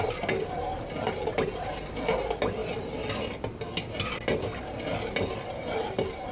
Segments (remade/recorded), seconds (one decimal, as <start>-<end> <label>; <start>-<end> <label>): 0.0-6.3 recorded